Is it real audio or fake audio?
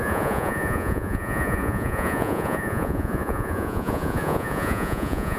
fake